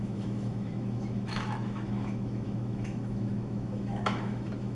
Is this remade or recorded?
remade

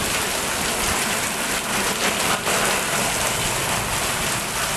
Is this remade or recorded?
recorded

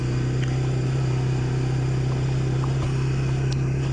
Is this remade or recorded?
recorded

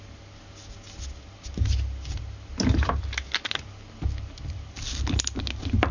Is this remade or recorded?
recorded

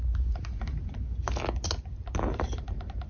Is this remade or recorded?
recorded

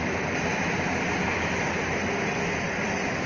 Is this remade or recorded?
recorded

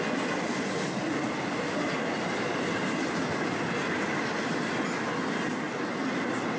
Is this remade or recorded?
recorded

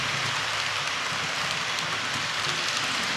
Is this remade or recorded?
recorded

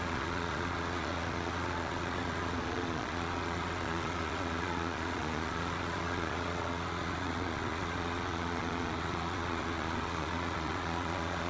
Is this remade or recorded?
remade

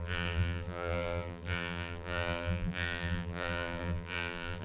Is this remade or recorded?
remade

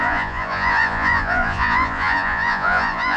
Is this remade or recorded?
remade